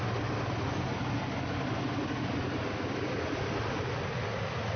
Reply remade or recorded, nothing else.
recorded